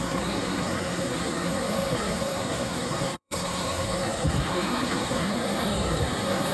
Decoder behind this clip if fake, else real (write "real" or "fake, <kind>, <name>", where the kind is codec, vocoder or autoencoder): fake, codec, SNAC